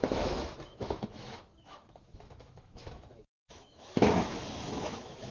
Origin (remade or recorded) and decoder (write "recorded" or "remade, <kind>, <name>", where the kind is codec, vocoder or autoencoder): remade, autoencoder, DAC-VAE